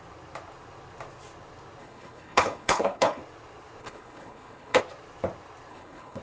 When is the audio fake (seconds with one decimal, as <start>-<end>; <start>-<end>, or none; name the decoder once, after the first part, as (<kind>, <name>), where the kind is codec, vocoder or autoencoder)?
1.8-3.2 (codec, HILCodec); 3.8-4.8; 5.7-6.2